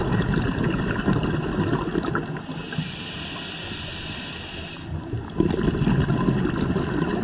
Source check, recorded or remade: recorded